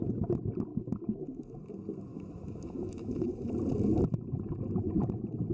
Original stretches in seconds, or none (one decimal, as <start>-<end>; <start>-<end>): 0.0-0.7; 1.4-2.1; 3.5-5.5